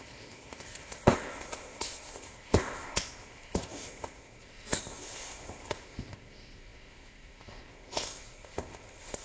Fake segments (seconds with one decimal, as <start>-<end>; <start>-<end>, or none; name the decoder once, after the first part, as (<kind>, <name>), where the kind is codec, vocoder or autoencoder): 0.0-9.2 (codec, ZipCodec)